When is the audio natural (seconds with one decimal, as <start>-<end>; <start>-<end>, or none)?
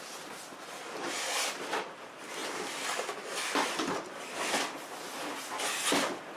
0.0-6.4